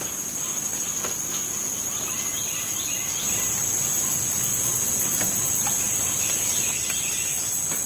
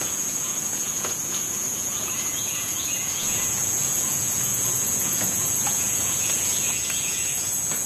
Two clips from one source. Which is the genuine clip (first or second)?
first